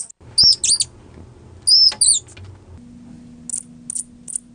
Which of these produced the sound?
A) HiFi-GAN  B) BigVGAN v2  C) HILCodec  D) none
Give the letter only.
D